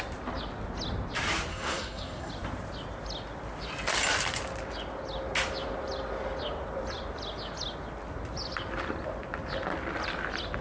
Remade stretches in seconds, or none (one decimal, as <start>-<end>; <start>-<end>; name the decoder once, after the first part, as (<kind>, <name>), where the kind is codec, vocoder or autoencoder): 1.5-2.3 (codec, SNAC)